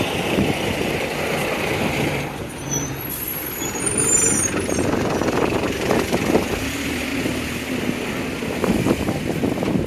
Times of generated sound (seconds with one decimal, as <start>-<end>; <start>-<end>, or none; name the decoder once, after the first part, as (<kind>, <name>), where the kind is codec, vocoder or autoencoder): 0.0-7.1 (vocoder, BigVGAN v2)

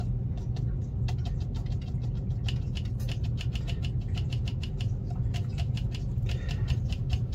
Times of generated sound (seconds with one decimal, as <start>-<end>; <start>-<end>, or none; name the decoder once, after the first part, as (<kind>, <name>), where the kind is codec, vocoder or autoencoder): none

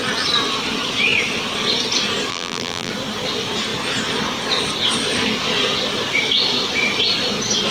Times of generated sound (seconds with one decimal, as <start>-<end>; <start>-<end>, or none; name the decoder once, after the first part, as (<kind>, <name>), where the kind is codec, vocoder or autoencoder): 2.3-2.9 (vocoder, BigVGAN v2)